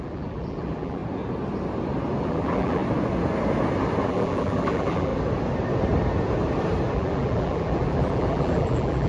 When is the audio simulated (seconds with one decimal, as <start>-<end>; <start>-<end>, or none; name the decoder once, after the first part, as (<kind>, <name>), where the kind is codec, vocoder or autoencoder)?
0.0-1.0 (vocoder, BigVGAN v2); 2.2-2.8; 4.0-5.1; 6.9-9.1